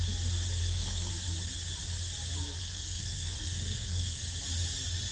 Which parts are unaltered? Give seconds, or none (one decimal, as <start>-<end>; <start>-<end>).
0.0-0.6; 1.1-2.6; 4.2-5.1